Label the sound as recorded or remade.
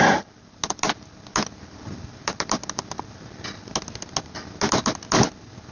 recorded